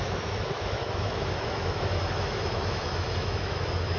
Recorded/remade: remade